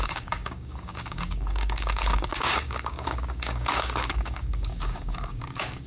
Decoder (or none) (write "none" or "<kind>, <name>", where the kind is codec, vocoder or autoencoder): codec, DAC